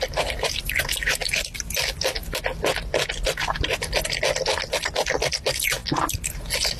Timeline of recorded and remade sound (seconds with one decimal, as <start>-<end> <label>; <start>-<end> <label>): 0.0-6.8 recorded